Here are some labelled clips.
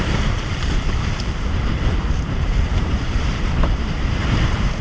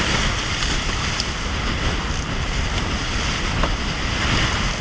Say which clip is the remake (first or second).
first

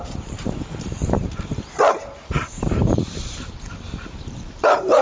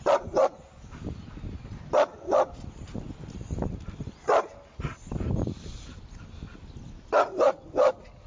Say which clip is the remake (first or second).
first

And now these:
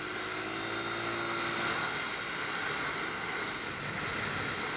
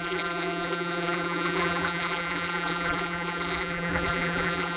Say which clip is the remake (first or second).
second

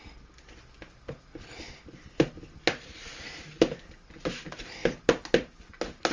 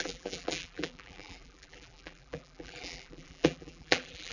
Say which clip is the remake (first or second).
second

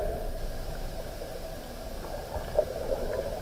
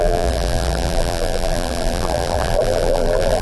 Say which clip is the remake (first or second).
second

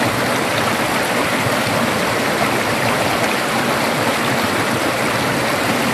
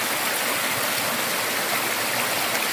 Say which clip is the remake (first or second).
first